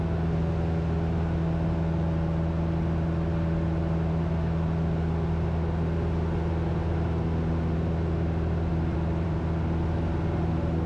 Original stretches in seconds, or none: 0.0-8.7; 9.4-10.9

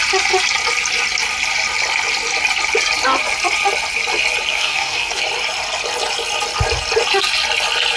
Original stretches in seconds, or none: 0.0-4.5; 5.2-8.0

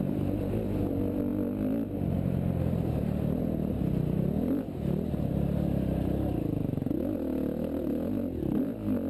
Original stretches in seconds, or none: 0.0-9.1